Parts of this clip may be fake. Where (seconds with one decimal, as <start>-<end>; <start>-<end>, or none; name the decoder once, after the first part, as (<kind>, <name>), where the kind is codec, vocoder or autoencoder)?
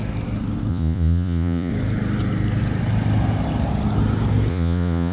0.7-1.7 (vocoder, Vocos); 4.5-5.1